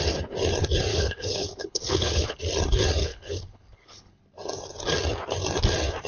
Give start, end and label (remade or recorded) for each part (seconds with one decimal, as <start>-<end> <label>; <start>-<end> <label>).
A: 0.0-0.9 recorded; 0.9-2.4 remade; 2.4-3.0 recorded; 3.0-4.2 remade; 4.2-6.1 recorded